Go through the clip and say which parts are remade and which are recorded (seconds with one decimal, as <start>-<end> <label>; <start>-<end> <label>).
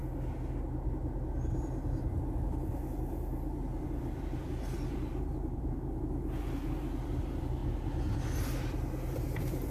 0.0-2.0 recorded; 2.0-7.6 remade; 7.6-8.4 recorded; 8.4-9.7 remade